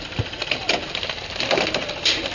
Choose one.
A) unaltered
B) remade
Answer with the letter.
A